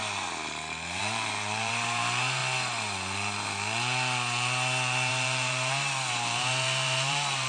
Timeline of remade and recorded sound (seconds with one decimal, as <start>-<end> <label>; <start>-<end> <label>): 0.0-1.0 recorded; 1.0-2.4 remade; 2.4-5.1 recorded; 5.1-7.5 remade